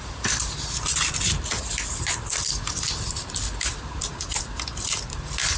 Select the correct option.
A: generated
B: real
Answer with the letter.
B